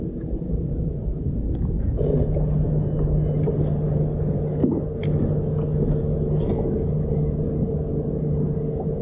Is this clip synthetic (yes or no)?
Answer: no